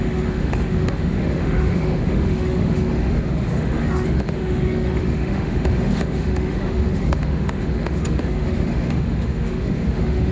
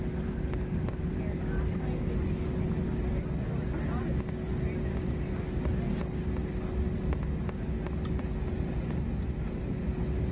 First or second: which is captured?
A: second